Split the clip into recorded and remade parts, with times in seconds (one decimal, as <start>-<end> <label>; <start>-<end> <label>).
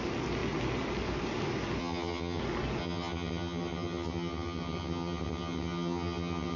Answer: 0.0-1.8 recorded; 1.8-2.4 remade; 2.4-2.8 recorded; 2.8-6.6 remade